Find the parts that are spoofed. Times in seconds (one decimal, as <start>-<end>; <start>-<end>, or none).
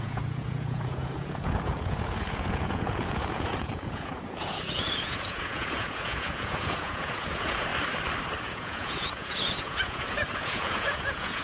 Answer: 0.0-7.7; 8.4-11.4